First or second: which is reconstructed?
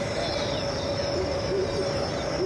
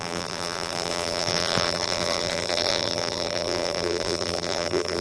second